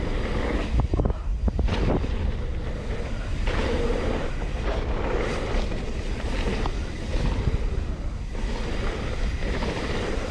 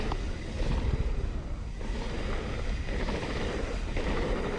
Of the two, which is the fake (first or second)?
first